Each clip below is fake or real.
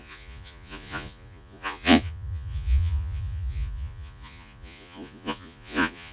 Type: fake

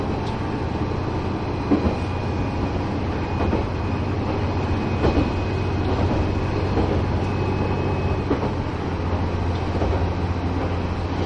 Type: real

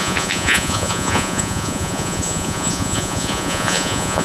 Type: fake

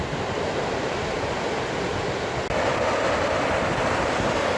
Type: real